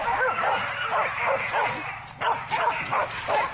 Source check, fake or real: real